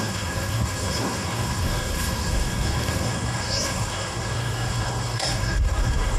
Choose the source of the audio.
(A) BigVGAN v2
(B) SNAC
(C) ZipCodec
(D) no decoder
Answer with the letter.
B